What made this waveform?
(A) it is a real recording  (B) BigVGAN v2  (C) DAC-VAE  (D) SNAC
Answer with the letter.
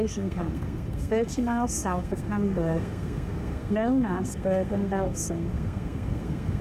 D